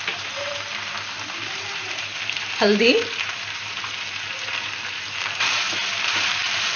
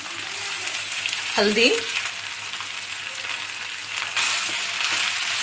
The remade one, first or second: first